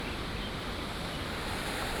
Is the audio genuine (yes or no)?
yes